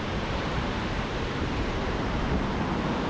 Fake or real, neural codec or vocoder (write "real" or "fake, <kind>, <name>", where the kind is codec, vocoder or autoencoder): fake, vocoder, BigVGAN v2